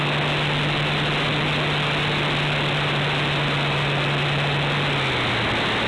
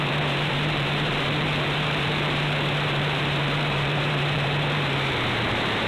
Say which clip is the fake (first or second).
second